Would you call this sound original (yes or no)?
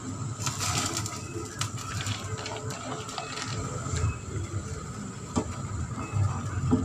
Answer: yes